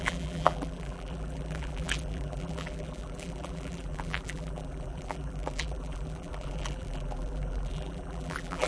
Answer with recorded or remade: remade